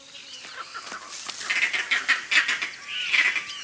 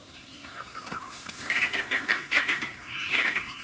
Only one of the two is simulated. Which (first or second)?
second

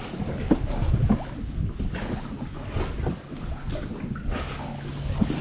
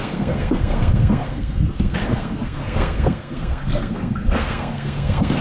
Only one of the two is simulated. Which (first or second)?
second